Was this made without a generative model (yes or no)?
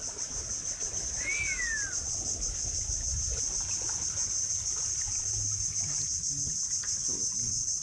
yes